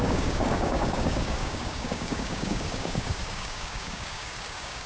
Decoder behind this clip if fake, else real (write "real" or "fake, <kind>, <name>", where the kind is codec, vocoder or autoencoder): fake, codec, DAC